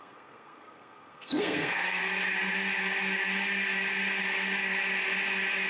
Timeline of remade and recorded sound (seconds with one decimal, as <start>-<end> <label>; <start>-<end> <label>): 0.0-2.0 remade; 2.0-5.7 recorded